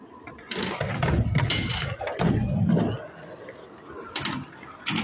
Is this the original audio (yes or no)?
yes